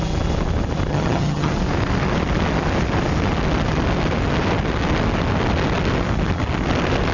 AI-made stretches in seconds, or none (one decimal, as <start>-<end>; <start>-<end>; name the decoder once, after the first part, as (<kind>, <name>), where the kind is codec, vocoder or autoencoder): 0.9-1.5 (vocoder, HiFi-GAN)